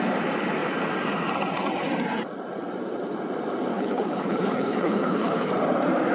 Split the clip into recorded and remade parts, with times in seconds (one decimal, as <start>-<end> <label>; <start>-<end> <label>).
0.0-3.7 recorded; 3.7-5.5 remade; 5.5-6.1 recorded